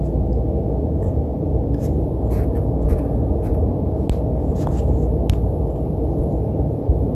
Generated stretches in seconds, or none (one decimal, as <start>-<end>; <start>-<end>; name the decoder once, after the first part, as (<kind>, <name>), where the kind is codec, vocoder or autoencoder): none